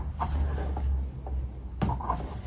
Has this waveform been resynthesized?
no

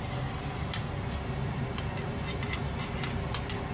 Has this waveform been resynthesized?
no